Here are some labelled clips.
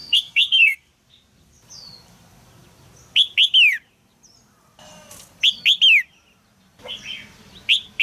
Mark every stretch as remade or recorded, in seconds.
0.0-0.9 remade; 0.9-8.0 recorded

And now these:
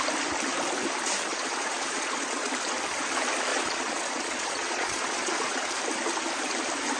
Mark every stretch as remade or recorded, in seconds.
0.0-1.3 recorded; 1.3-2.5 remade; 2.5-3.5 recorded; 3.5-5.7 remade; 5.7-7.0 recorded